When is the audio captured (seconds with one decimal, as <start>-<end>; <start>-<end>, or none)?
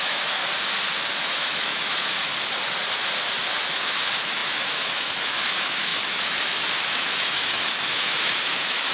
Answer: 0.4-1.2; 2.3-3.5